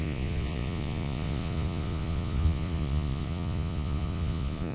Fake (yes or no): yes